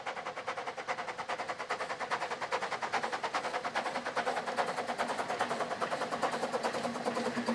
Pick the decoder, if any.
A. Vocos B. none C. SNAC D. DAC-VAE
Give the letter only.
B